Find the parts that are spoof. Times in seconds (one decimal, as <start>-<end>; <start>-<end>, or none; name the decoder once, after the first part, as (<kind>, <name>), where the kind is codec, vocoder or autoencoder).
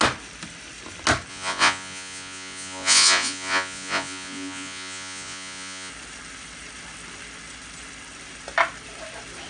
1.3-5.9 (vocoder, Vocos)